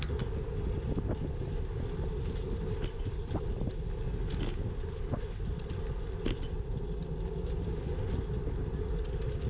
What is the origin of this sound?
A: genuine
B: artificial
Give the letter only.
A